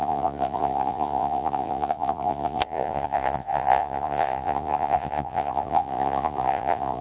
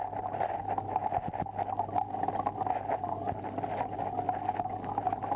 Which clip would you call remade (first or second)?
first